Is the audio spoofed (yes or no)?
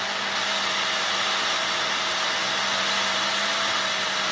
no